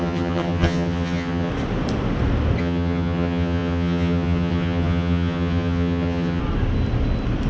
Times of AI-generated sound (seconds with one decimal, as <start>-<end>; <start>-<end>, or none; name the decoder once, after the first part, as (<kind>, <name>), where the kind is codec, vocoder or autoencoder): 0.0-1.5 (vocoder, HiFi-GAN); 2.6-6.4